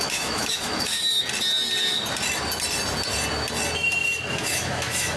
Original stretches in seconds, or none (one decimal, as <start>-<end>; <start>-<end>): 1.2-4.3